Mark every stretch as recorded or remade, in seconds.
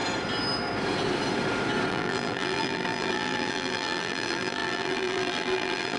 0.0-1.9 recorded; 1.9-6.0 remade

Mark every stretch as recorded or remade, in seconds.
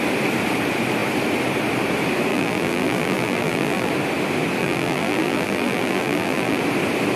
0.0-2.3 recorded; 2.3-3.9 remade; 3.9-4.6 recorded; 4.6-6.6 remade; 6.6-7.2 recorded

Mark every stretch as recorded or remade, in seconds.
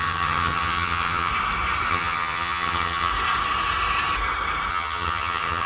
0.0-1.3 remade; 1.3-1.9 recorded; 1.9-3.1 remade; 3.1-4.7 recorded; 4.7-5.7 remade